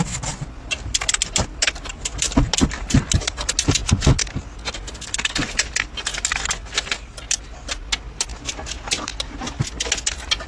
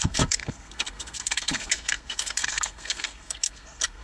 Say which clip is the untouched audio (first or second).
first